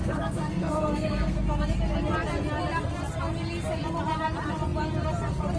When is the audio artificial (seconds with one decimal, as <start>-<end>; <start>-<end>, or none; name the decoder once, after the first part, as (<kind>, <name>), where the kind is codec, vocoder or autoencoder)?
0.0-1.4 (codec, SNAC)